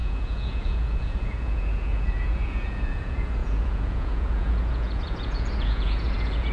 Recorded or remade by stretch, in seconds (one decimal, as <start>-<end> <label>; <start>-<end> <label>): 0.0-6.5 remade